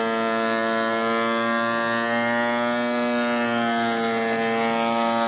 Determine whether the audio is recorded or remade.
recorded